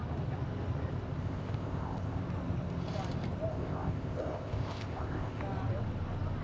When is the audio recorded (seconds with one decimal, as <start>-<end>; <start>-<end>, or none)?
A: 0.0-1.2; 2.2-3.5; 5.4-6.4